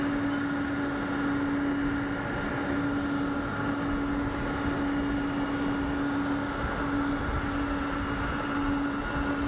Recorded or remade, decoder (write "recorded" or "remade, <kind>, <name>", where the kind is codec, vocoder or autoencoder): recorded